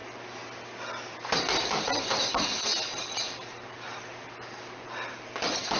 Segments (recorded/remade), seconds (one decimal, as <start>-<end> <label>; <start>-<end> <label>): 0.0-5.8 recorded